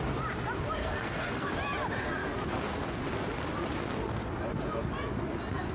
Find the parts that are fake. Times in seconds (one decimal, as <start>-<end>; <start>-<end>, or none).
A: 0.8-1.5

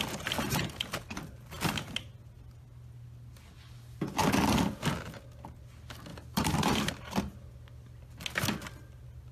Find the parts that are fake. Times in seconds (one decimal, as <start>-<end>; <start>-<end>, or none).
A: 6.1-6.9

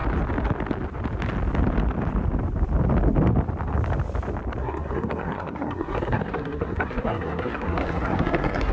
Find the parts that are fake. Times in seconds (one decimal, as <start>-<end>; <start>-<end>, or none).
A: 4.6-8.7